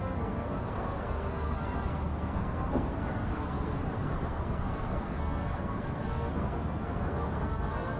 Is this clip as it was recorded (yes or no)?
no